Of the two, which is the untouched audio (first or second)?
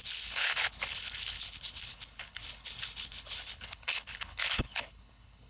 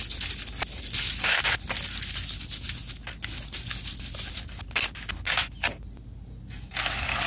second